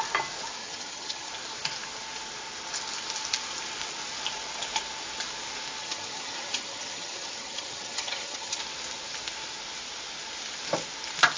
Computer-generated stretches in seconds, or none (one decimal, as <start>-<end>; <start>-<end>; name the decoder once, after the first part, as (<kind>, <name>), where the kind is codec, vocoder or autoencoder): 0.6-1.3 (vocoder, HiFi-GAN); 5.8-8.6